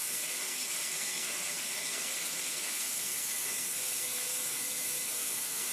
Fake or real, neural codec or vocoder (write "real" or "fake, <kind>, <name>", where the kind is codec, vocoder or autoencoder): fake, codec, SNAC